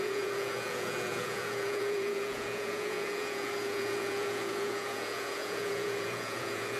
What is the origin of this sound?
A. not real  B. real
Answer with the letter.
A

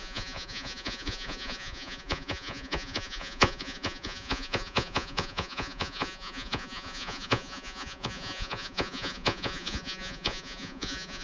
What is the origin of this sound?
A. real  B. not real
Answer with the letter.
B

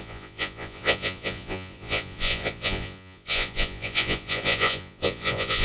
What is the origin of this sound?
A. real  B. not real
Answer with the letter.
B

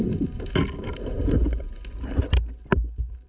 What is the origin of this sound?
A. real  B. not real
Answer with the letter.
A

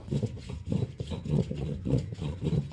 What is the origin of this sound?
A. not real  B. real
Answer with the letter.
A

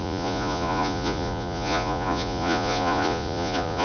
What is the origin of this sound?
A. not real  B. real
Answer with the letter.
A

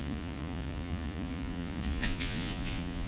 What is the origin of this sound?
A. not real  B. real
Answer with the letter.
A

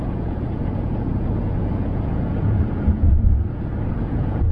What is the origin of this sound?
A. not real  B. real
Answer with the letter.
A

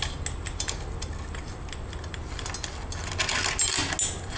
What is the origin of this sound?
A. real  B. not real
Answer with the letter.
A